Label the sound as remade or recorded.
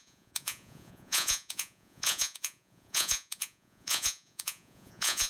remade